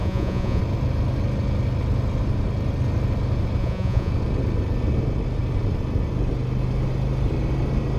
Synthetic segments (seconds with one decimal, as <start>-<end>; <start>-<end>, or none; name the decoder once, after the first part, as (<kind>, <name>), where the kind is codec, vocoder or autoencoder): 0.0-0.6 (vocoder, Vocos); 3.6-4.1